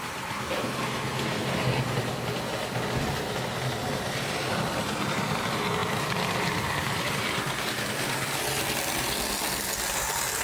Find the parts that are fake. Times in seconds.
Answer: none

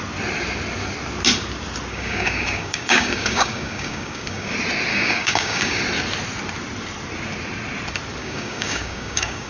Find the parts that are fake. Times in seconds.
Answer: 1.9-4.5 (codec, DAC); 4.9-5.8; 8.2-9.5

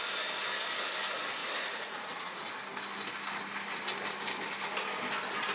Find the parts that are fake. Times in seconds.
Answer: 1.4-2.5 (vocoder, Vocos)

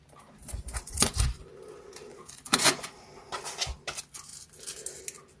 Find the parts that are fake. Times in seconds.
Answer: 0.4-1.5 (vocoder, Vocos); 2.1-2.9

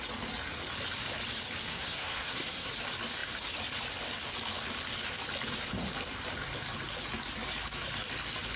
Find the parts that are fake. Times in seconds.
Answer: 1.7-2.7 (codec, SNAC)